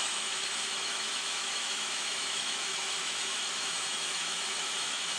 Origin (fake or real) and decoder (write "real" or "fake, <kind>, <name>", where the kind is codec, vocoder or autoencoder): fake, autoencoder, DAC-VAE